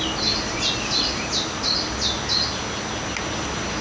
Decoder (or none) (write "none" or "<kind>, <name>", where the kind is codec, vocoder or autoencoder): none